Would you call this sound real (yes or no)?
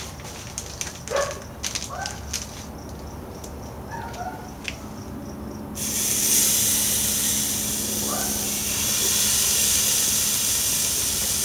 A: yes